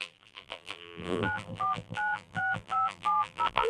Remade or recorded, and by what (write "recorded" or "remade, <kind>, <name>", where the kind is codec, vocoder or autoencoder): remade, vocoder, BigVGAN v2